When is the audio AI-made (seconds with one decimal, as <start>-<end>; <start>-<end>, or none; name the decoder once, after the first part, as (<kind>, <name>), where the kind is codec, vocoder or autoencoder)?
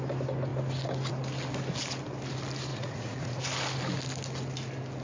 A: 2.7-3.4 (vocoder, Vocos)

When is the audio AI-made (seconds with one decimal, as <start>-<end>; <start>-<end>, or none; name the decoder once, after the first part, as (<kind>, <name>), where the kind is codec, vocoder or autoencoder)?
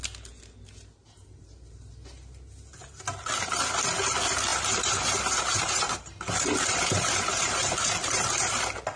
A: 1.0-1.9 (vocoder, BigVGAN v2); 4.5-8.5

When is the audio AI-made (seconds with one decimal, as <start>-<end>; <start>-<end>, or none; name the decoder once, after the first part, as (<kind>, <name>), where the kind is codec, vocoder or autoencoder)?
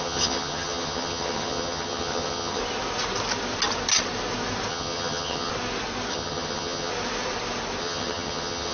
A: 0.0-2.6 (vocoder, HiFi-GAN); 4.7-5.5; 6.1-6.9; 7.8-8.7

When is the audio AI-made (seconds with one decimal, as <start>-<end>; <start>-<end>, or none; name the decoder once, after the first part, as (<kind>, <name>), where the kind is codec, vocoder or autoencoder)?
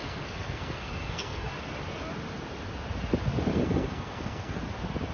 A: 0.0-1.5 (codec, SNAC); 3.5-4.6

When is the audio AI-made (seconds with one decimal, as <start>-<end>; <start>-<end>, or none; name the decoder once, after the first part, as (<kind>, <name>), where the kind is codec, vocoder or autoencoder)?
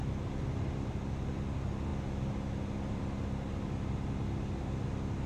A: none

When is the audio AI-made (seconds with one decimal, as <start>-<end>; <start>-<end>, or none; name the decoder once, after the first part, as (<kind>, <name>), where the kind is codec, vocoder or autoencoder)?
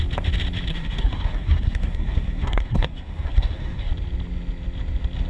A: 0.7-3.9 (codec, SNAC)